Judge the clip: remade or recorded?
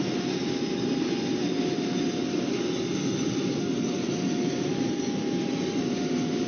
recorded